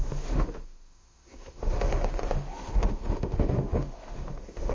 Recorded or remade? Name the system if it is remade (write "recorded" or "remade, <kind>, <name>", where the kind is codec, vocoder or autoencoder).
remade, autoencoder, DAC-VAE